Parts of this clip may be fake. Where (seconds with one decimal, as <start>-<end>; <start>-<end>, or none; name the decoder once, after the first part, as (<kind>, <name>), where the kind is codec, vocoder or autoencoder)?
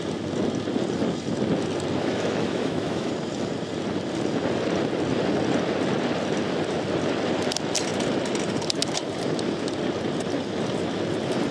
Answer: 2.0-3.1 (autoencoder, DAC-VAE)